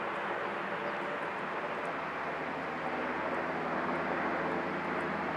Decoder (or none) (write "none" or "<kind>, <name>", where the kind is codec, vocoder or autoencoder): none